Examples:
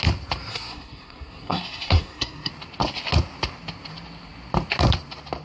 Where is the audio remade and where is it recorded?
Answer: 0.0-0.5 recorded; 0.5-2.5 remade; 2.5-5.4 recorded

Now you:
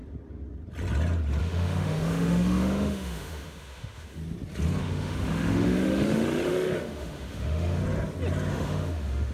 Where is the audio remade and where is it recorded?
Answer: 0.0-1.4 recorded; 1.4-4.2 remade; 4.2-4.8 recorded; 4.8-7.8 remade; 7.8-8.5 recorded; 8.5-9.3 remade

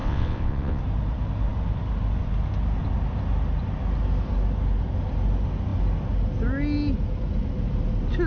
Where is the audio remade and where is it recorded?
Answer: 0.0-0.8 remade; 0.8-8.3 recorded